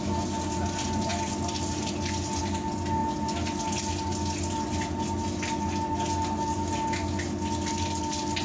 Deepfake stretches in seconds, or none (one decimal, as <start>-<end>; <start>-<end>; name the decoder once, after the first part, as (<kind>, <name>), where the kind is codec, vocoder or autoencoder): none